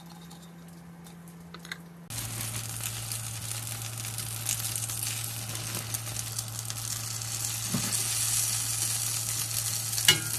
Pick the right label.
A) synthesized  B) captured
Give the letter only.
B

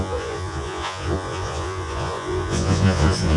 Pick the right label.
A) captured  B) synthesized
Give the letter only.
B